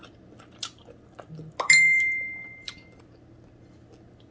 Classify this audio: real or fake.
real